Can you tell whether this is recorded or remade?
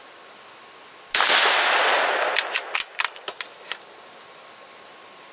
recorded